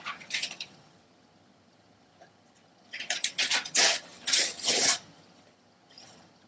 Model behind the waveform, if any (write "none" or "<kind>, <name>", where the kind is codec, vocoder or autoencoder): vocoder, HiFi-GAN